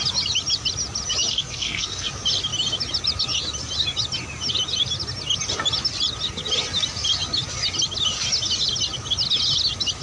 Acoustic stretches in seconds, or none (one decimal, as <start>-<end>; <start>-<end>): 0.0-1.3; 2.1-10.0